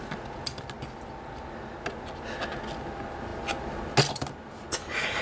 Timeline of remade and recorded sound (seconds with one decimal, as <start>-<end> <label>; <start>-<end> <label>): 0.0-5.2 recorded